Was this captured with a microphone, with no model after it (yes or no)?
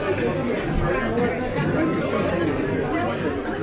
yes